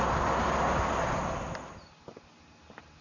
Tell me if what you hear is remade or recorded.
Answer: recorded